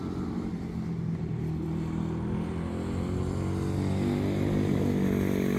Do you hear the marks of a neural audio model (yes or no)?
no